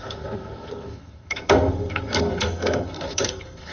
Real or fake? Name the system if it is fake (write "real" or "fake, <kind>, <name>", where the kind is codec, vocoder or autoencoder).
fake, codec, SNAC